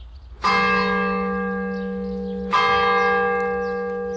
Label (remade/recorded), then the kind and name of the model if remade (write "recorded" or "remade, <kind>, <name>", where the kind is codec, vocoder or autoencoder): recorded